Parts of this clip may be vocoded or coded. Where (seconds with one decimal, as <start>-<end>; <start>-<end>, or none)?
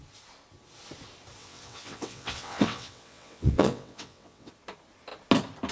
1.4-4.5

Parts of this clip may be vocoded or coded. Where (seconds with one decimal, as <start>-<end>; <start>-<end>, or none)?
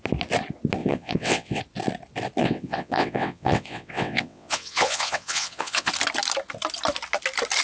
0.8-1.6; 2.4-5.9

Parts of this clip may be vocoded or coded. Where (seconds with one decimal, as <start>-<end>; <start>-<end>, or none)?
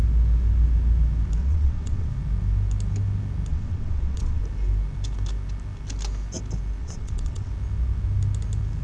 1.4-2.1; 3.5-4.4; 6.8-7.5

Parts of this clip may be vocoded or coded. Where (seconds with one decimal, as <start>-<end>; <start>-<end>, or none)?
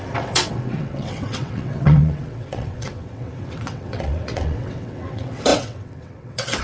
0.0-6.6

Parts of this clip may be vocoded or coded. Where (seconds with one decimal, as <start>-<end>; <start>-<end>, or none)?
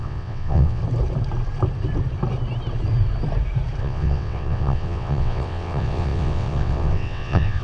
0.0-0.8; 3.8-7.6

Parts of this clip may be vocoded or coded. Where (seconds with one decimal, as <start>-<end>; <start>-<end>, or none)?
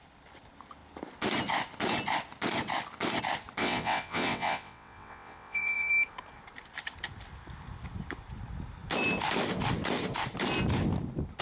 3.6-5.9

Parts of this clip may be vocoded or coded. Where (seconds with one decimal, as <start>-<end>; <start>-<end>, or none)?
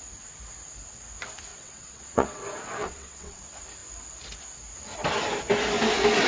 1.5-2.4; 2.8-3.4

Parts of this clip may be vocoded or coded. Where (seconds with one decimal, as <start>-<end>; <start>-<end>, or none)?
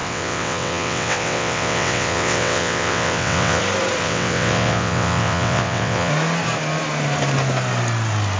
0.0-3.6; 4.0-6.1